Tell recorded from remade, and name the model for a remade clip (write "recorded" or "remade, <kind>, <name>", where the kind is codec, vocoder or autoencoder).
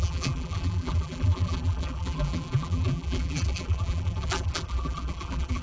remade, vocoder, BigVGAN v2